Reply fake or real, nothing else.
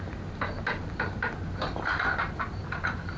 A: fake